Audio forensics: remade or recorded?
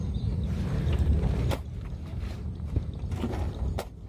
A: remade